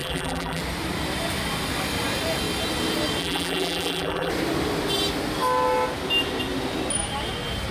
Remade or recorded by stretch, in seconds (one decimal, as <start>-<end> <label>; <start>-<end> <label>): 0.0-0.6 remade; 0.6-3.2 recorded; 3.2-4.3 remade; 4.3-7.7 recorded